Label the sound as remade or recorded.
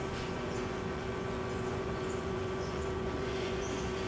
remade